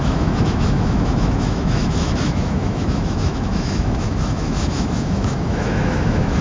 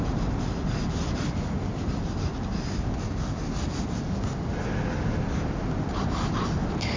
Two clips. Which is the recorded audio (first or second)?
second